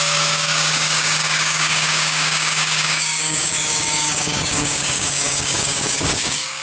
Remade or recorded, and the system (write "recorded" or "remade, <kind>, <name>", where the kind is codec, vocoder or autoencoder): remade, codec, DAC